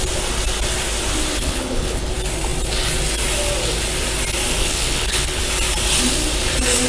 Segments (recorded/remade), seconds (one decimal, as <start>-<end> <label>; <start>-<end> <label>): 0.0-1.4 recorded; 1.4-2.1 remade; 2.1-4.6 recorded; 4.6-5.4 remade; 5.4-6.9 recorded